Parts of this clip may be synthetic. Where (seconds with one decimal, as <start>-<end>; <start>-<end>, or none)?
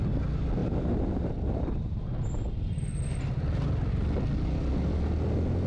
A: none